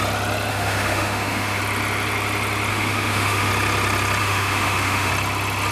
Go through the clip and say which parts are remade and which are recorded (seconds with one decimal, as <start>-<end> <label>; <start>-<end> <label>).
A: 0.0-0.5 recorded; 0.5-1.6 remade; 1.6-2.7 recorded; 2.7-3.5 remade; 3.5-4.2 recorded; 4.2-5.1 remade; 5.1-5.7 recorded